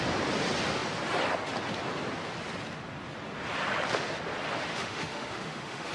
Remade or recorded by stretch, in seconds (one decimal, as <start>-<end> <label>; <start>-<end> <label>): 0.0-4.7 recorded; 4.7-5.9 remade